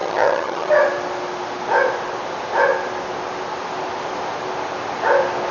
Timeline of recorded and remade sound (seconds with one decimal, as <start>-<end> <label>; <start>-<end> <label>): 0.0-0.7 remade; 0.7-5.5 recorded

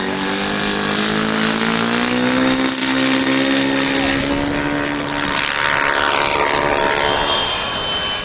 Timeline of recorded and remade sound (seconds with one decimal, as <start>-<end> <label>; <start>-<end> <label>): 0.0-8.2 recorded

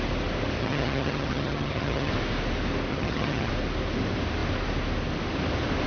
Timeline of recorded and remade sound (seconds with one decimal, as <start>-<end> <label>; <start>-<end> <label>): 0.0-0.6 recorded; 0.6-2.1 remade; 2.1-2.9 recorded; 2.9-3.5 remade; 3.5-5.9 recorded

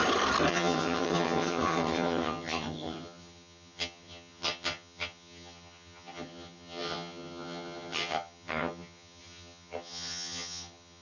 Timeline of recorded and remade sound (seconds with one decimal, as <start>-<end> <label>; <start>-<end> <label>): 0.0-0.5 recorded; 0.5-11.0 remade

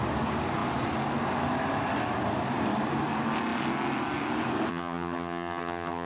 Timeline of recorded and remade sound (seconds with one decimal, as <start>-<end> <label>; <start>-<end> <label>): 0.0-4.7 recorded; 4.7-6.1 remade

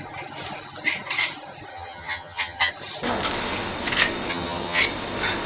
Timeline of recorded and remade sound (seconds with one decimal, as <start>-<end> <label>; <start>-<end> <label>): 0.0-1.7 recorded; 1.7-2.7 remade; 2.7-4.3 recorded; 4.3-4.8 remade; 4.8-5.5 recorded